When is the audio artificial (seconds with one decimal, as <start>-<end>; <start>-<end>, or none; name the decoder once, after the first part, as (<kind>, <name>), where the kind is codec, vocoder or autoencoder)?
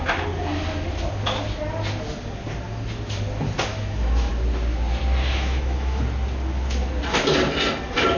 3.7-4.3 (autoencoder, DAC-VAE); 5.2-6.0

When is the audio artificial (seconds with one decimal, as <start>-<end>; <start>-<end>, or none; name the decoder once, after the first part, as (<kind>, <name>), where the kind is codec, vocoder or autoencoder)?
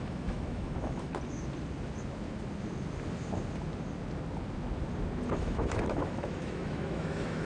0.0-1.1 (autoencoder, DAC-VAE); 5.3-7.4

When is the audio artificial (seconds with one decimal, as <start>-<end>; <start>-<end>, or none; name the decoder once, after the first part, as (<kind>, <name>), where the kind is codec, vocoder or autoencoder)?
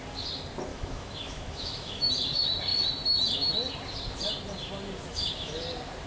0.7-2.1 (autoencoder, DAC-VAE); 5.1-5.6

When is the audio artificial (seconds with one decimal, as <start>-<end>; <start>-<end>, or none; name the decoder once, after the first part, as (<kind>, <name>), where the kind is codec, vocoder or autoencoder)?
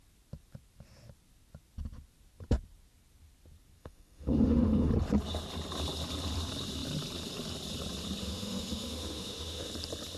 3.8-4.9 (autoencoder, DAC-VAE); 8.2-9.7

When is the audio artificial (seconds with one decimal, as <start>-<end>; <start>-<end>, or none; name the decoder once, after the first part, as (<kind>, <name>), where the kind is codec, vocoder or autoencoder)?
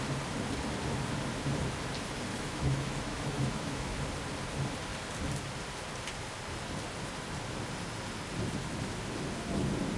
2.3-4.0 (autoencoder, DAC-VAE)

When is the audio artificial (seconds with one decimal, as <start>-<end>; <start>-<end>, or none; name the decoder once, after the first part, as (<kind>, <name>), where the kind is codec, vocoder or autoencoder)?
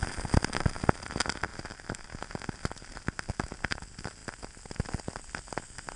none